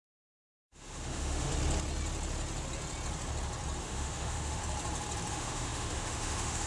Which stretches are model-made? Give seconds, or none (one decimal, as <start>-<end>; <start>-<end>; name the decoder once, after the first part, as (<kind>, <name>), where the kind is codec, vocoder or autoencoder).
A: 0.0-1.5 (autoencoder, DAC-VAE); 3.8-4.6; 5.3-6.7